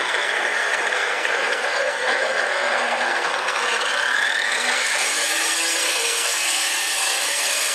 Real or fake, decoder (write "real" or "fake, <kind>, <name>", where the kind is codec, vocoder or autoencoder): fake, codec, SNAC